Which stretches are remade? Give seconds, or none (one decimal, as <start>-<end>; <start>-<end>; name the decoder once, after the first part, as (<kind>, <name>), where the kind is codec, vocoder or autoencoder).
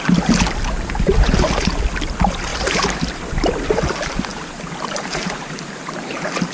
2.5-3.5 (vocoder, BigVGAN v2); 4.3-6.5